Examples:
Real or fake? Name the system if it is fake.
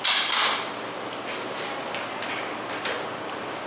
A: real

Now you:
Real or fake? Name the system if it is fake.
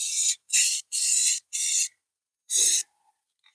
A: fake, vocoder, Vocos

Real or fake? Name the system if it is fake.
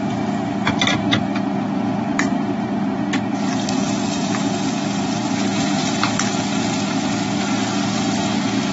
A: real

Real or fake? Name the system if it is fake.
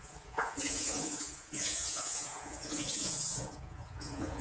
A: fake, vocoder, Vocos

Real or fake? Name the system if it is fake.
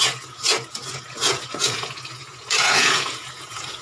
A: fake, vocoder, Vocos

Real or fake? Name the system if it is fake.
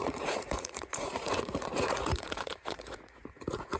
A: fake, vocoder, Vocos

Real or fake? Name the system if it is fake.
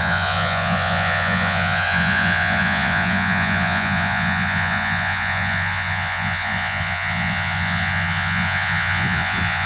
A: fake, vocoder, Vocos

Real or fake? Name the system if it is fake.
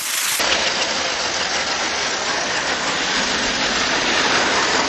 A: real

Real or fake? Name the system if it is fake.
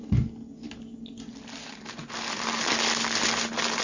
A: real